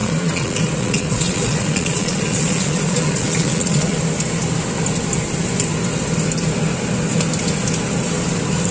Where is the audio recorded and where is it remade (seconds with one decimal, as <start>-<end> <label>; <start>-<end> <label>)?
0.0-4.0 remade; 4.0-8.7 recorded